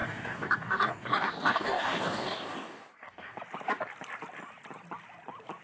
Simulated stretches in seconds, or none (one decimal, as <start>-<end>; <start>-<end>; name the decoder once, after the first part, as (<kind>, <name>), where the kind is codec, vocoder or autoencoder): 0.0-3.4 (codec, DAC)